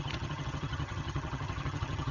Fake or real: fake